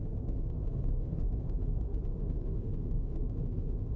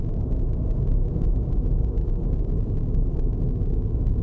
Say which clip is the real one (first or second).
second